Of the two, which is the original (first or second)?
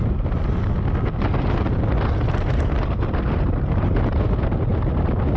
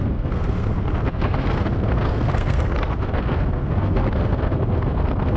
first